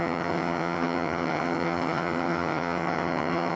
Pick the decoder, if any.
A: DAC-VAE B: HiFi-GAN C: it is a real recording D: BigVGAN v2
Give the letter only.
B